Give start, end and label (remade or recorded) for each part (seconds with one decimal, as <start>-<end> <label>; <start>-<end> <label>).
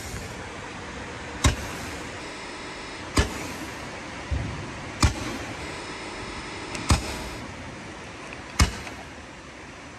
0.0-2.2 recorded; 2.2-3.0 remade; 3.0-5.6 recorded; 5.6-7.4 remade; 7.4-10.0 recorded